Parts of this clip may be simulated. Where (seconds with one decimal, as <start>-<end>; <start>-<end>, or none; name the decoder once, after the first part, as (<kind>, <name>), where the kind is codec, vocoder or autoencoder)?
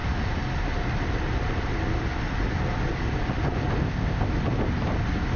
3.8-4.3 (codec, ZipCodec)